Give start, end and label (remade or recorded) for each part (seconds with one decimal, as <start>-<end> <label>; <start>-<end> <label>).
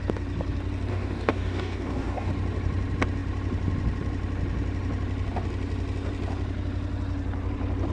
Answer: 0.0-0.9 recorded; 0.9-2.3 remade; 2.3-7.9 recorded